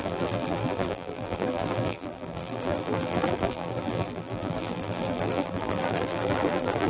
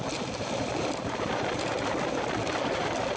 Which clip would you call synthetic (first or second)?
first